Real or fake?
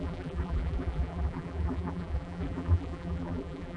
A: fake